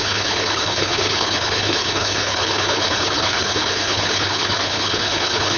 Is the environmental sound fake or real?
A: fake